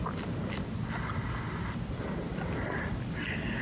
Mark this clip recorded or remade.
recorded